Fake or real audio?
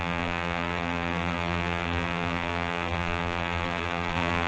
fake